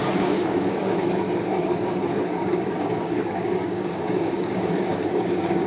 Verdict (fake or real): fake